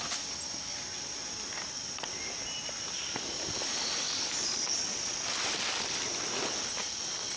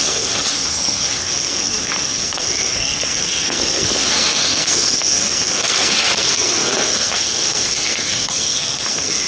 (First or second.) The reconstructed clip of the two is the second